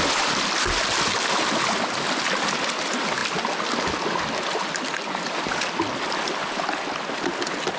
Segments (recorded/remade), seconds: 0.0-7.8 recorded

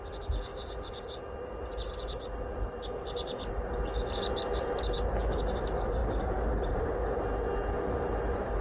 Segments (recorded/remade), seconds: 0.0-0.5 recorded; 0.5-1.0 remade; 1.0-1.7 recorded; 1.7-3.7 remade; 3.7-6.0 recorded; 6.0-6.8 remade; 6.8-7.6 recorded; 7.6-8.6 remade

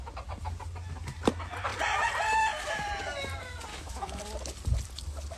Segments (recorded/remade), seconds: 0.0-3.7 recorded; 3.7-4.2 remade; 4.2-5.4 recorded

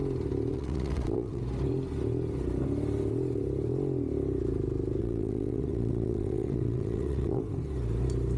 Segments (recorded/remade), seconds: 0.0-0.5 recorded; 0.5-1.4 remade; 1.4-5.0 recorded; 5.0-7.4 remade; 7.4-8.4 recorded

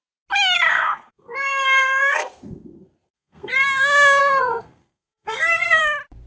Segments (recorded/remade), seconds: 0.0-0.7 recorded; 0.7-3.5 remade; 3.5-4.2 recorded; 4.2-5.8 remade; 5.8-6.3 recorded

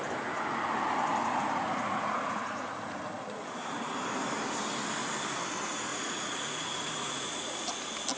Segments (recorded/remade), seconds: 0.0-1.2 recorded; 1.2-3.0 remade; 3.0-5.9 recorded; 5.9-7.7 remade; 7.7-8.2 recorded

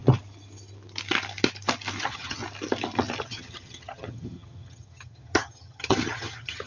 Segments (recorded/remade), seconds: 0.0-2.0 recorded; 2.0-2.4 remade; 2.4-3.2 recorded; 3.2-6.7 remade

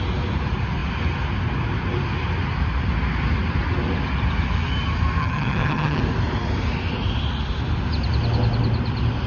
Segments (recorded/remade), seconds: 0.0-5.2 recorded; 5.2-6.0 remade; 6.0-9.3 recorded